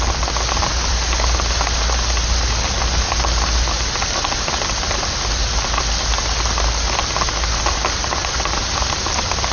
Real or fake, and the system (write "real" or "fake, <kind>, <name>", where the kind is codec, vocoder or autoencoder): real